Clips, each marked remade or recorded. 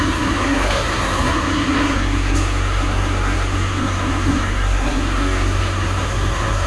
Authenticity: remade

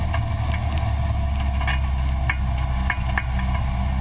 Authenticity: recorded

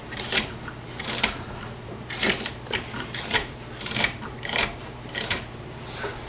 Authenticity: remade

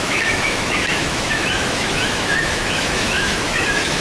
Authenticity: remade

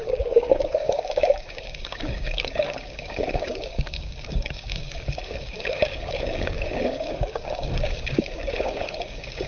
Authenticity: remade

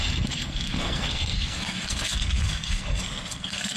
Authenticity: remade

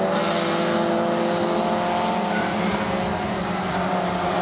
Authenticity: recorded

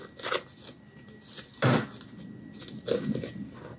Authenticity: recorded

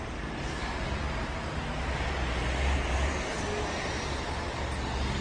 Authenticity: recorded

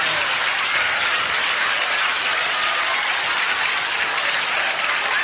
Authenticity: recorded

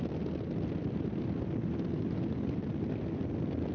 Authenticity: recorded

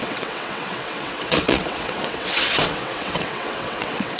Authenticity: remade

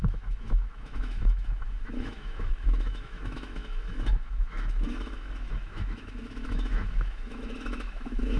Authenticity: remade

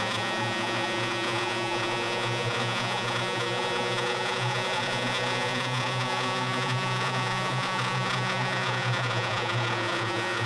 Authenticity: remade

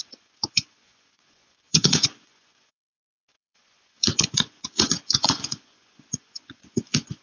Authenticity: remade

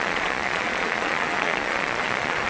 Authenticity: remade